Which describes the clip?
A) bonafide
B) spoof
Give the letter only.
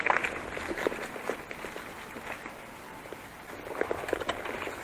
A